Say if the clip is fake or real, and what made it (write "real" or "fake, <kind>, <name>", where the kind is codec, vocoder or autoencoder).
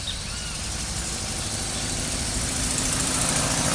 fake, vocoder, BigVGAN v2